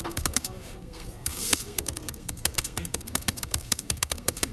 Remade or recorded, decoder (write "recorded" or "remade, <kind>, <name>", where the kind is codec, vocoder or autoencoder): remade, codec, SNAC